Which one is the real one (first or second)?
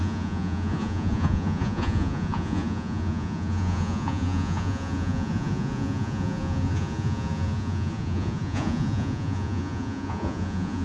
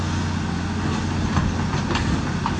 second